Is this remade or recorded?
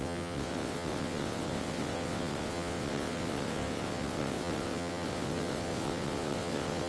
remade